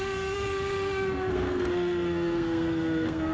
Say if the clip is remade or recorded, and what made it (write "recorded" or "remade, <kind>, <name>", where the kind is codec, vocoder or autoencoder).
remade, codec, SNAC